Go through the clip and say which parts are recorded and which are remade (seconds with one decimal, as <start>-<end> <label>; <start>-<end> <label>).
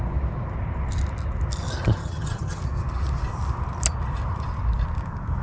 0.0-2.0 recorded; 2.0-2.6 remade; 2.6-5.4 recorded